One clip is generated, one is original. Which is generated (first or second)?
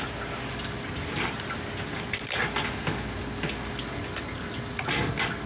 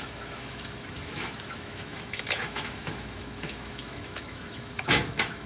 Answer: second